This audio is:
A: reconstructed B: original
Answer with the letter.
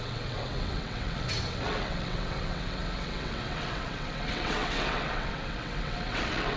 A